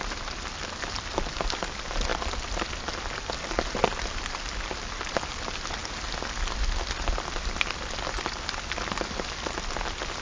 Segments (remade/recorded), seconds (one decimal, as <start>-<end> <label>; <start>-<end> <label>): 0.0-10.2 recorded